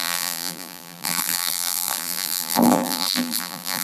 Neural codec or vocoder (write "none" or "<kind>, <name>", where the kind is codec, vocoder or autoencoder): vocoder, BigVGAN v2